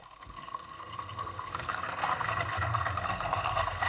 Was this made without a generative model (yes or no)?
no